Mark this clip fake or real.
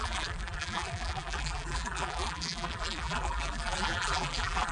fake